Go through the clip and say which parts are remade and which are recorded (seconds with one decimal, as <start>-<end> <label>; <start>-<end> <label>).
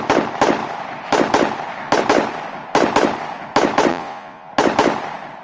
0.0-3.9 recorded; 3.9-4.5 remade; 4.5-5.4 recorded